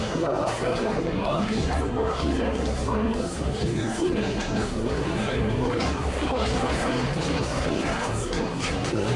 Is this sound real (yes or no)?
no